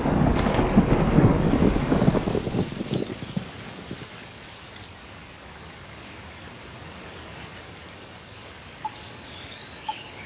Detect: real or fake fake